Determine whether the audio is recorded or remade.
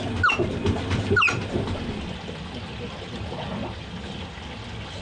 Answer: recorded